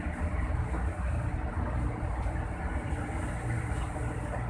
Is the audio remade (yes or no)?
no